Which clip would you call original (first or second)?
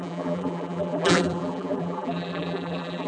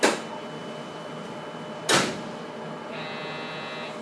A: second